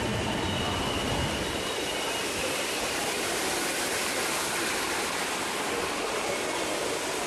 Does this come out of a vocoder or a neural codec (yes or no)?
no